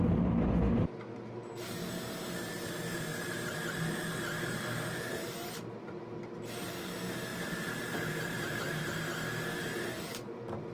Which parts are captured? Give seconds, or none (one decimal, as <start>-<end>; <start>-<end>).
0.0-3.1; 5.3-7.3; 9.1-10.7